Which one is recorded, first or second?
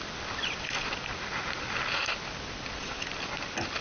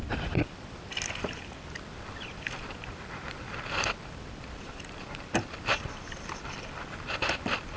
first